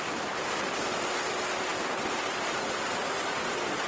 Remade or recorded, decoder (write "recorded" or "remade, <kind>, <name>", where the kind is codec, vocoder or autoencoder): recorded